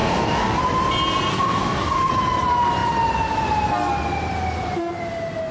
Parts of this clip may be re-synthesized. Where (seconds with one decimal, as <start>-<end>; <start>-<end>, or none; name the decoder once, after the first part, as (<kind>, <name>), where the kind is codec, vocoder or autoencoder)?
0.0-0.6 (codec, DAC); 1.3-2.1